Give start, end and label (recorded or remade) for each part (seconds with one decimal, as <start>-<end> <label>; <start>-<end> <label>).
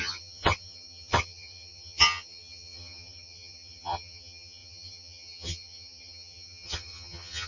0.0-7.5 remade